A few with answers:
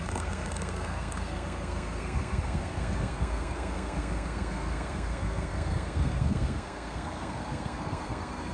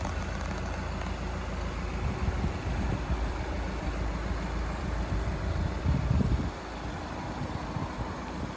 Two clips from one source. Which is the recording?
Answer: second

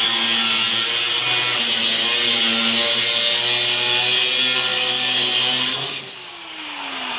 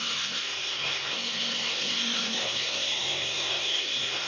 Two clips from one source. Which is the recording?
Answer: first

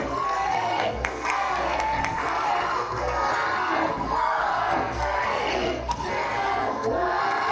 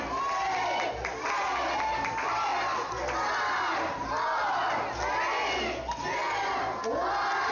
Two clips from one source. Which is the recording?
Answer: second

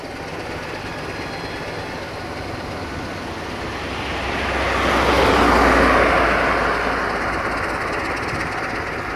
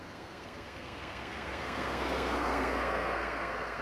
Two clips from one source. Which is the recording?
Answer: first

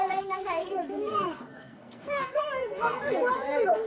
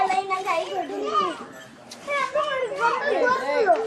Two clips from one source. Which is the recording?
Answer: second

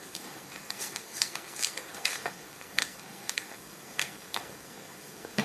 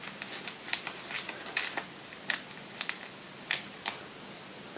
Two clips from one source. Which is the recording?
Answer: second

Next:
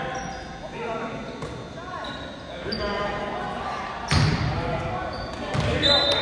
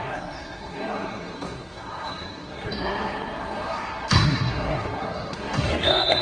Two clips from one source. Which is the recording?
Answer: first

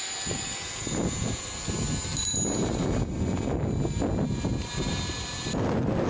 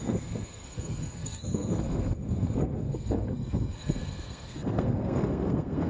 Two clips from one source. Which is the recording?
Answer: first